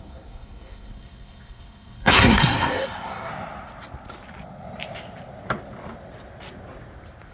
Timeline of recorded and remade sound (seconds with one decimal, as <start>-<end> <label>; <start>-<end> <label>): 0.0-3.3 remade; 3.3-7.3 recorded